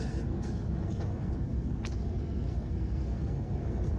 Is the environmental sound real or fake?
fake